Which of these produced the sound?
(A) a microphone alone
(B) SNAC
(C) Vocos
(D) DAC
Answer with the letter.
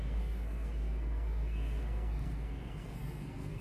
B